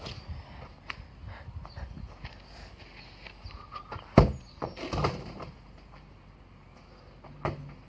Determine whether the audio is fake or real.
real